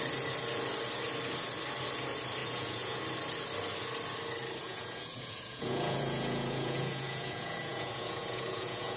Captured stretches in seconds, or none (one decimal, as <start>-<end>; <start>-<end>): 0.0-2.4; 3.0-4.6